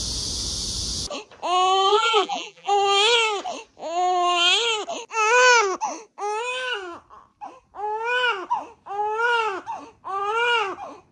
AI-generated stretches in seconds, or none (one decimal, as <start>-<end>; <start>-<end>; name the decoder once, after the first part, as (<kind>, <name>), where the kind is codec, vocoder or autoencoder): 1.9-2.7 (vocoder, BigVGAN v2)